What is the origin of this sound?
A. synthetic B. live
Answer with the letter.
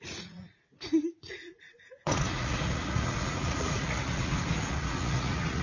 A